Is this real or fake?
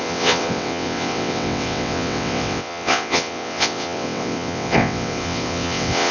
fake